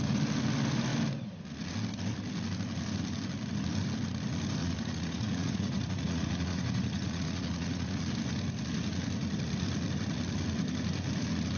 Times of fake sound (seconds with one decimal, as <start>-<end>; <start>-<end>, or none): 4.6-8.0

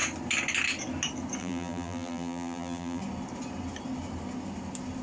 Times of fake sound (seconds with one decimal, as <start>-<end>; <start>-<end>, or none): 1.4-3.0

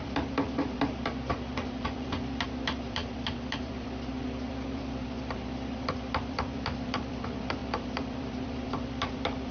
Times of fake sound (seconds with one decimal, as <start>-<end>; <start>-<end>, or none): 0.0-9.5

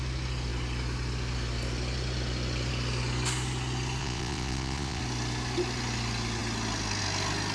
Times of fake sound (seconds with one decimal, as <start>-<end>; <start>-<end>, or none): 4.0-5.0

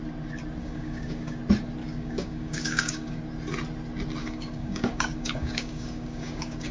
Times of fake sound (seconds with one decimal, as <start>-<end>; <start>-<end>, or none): 0.6-1.4; 1.8-3.2; 4.2-6.7

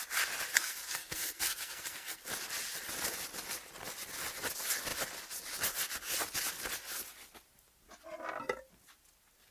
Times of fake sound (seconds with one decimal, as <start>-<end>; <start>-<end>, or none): 0.5-2.2

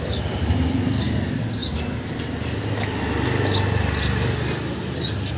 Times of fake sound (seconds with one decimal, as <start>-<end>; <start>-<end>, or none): none

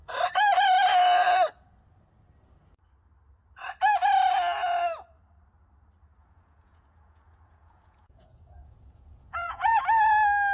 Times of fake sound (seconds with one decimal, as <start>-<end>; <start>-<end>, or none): 6.2-9.8